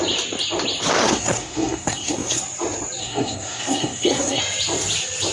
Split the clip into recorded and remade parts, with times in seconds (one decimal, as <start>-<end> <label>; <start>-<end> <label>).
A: 0.0-1.0 recorded; 1.0-2.4 remade; 2.4-3.0 recorded; 3.0-4.4 remade; 4.4-5.3 recorded